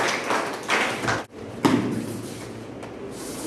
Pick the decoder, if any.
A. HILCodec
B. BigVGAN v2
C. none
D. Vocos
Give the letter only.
C